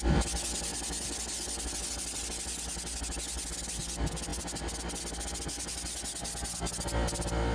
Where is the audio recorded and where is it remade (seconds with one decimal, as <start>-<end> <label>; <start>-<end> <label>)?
0.0-7.5 recorded